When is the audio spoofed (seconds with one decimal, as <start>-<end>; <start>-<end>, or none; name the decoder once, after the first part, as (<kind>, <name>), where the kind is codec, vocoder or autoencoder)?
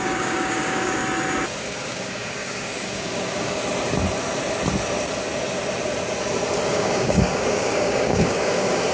0.0-1.0 (codec, DAC); 1.6-3.6; 6.7-8.9